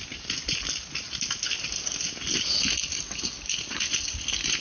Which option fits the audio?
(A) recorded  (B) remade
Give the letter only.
A